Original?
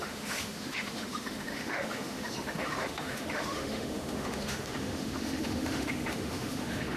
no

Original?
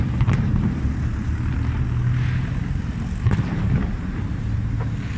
yes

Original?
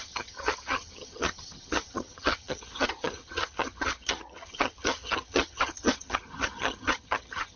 no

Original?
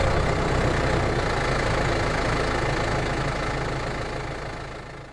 yes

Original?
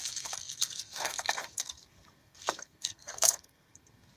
no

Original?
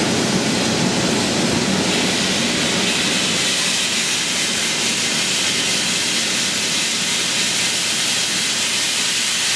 yes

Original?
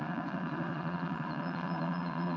no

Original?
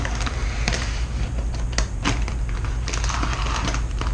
yes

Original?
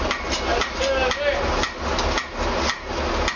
yes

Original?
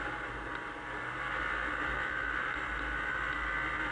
yes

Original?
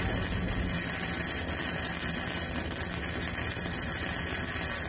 yes